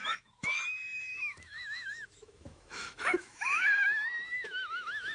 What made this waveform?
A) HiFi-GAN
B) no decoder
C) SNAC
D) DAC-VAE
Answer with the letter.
D